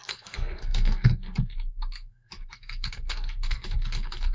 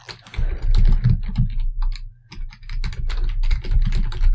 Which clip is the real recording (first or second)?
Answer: second